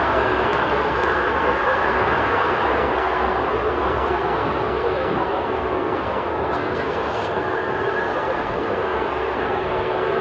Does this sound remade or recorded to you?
remade